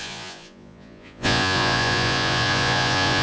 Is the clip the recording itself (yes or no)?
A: no